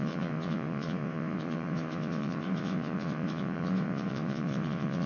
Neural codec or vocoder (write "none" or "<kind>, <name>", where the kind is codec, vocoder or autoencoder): vocoder, WaveNeXt